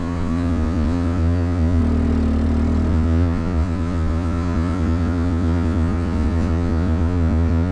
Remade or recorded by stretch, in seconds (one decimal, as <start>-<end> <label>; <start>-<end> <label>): 0.0-1.8 remade; 1.8-2.9 recorded; 2.9-7.7 remade